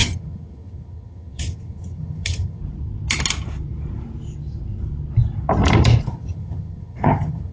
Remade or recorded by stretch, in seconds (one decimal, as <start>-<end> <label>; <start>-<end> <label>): 0.0-2.6 remade; 2.6-6.1 recorded; 6.1-7.5 remade